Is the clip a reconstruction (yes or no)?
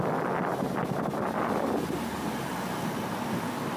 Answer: no